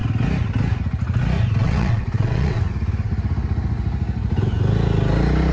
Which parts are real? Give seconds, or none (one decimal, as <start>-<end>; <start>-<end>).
0.0-1.6; 2.6-5.5